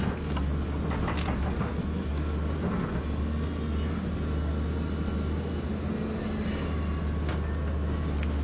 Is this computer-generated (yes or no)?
no